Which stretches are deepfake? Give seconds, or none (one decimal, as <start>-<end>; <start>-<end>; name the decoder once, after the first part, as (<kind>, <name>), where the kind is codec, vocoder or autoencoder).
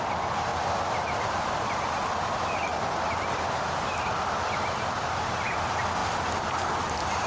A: none